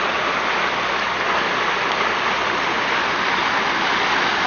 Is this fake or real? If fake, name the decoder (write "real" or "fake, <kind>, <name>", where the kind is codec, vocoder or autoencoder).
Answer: real